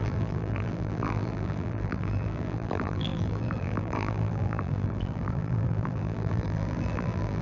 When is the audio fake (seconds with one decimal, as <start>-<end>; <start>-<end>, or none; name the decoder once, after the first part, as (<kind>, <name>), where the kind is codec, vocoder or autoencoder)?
0.0-7.4 (vocoder, BigVGAN v2)